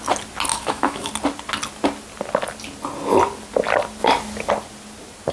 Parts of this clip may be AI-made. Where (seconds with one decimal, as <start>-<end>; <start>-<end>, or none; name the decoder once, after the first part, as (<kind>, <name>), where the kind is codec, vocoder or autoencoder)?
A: 0.5-1.1 (autoencoder, DAC-VAE)